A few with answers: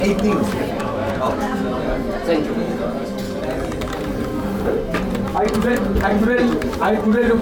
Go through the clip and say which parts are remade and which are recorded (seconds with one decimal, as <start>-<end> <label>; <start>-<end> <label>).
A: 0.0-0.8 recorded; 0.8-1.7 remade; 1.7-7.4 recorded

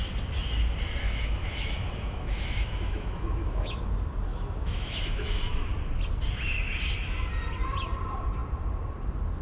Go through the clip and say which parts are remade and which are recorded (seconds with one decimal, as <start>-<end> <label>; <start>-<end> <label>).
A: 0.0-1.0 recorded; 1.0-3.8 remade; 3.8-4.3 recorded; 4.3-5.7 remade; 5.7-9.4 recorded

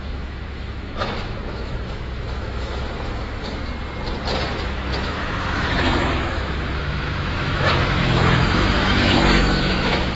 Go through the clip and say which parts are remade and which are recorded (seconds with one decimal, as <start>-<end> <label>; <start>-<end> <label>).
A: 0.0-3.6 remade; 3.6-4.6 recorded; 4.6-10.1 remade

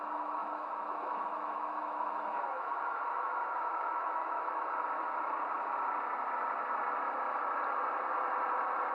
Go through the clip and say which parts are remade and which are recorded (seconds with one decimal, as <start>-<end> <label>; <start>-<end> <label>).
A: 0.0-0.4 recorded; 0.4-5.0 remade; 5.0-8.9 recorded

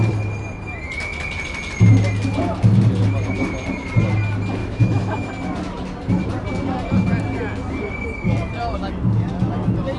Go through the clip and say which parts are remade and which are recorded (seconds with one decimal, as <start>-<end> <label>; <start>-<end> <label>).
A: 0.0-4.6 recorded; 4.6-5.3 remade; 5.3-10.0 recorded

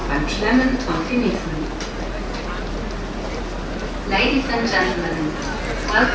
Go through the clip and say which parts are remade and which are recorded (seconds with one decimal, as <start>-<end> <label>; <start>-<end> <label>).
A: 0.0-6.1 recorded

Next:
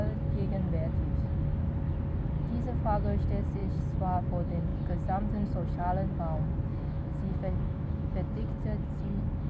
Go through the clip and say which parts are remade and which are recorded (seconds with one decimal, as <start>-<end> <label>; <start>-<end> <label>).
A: 0.0-6.7 recorded; 6.7-8.1 remade; 8.1-9.5 recorded